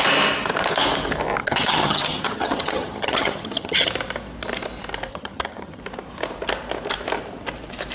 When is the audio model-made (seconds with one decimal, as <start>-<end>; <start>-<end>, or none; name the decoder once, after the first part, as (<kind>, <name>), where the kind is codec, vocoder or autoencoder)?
1.4-3.9 (vocoder, HiFi-GAN); 5.1-5.8